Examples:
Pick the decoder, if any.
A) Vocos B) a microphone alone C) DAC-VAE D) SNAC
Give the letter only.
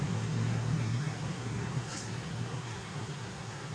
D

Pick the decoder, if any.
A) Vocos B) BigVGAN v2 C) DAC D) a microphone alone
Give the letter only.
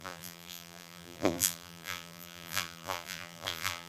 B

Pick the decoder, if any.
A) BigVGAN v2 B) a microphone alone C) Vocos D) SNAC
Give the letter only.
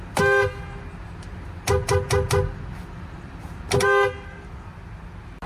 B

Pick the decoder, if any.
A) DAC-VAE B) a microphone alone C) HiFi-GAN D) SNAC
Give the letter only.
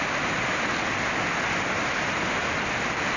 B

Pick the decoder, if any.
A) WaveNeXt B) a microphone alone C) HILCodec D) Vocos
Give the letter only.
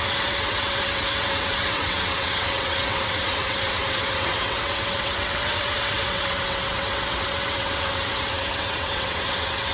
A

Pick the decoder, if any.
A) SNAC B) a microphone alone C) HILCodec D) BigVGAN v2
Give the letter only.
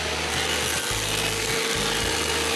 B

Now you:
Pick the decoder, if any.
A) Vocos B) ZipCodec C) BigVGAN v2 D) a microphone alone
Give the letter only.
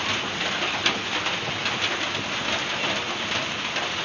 D